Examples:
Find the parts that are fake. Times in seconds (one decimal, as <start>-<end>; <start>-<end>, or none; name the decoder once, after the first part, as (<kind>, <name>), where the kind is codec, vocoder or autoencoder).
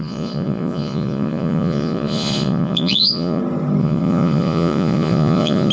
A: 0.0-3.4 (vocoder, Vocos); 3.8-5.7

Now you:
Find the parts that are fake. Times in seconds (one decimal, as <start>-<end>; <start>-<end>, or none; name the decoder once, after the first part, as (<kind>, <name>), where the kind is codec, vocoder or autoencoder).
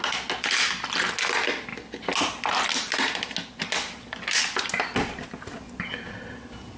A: none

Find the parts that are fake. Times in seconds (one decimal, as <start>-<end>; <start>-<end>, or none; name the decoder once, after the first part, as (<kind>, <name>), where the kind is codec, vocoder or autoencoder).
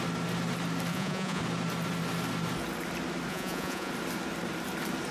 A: 0.9-1.4 (vocoder, Vocos); 3.3-3.9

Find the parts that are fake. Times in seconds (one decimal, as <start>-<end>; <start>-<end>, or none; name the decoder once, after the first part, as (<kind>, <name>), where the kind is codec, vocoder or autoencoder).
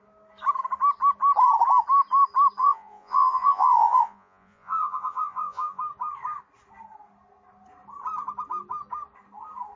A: 2.6-5.8 (vocoder, Vocos)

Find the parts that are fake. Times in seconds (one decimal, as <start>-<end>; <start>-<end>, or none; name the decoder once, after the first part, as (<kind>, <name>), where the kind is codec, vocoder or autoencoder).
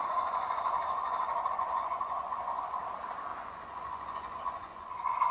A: 0.0-2.8 (vocoder, Vocos); 3.3-5.3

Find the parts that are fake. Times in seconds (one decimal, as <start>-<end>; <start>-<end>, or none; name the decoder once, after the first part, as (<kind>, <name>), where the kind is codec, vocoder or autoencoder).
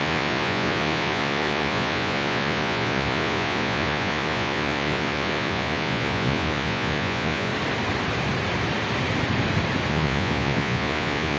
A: 0.0-7.5 (vocoder, Vocos); 9.9-11.4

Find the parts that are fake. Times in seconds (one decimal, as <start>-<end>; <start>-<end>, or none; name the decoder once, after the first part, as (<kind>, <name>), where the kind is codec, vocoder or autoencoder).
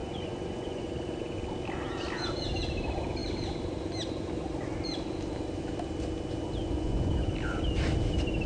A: 0.0-0.9 (vocoder, Vocos); 6.6-7.1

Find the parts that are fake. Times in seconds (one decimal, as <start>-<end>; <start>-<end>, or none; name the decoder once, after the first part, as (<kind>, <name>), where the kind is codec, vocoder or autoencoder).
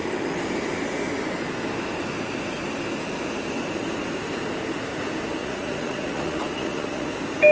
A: 5.4-7.1 (vocoder, Vocos)